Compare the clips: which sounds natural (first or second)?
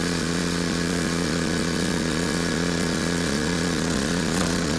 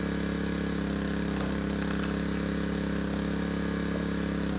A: second